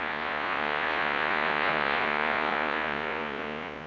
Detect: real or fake fake